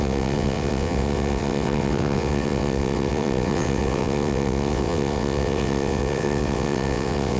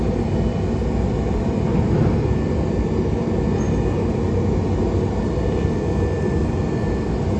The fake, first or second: first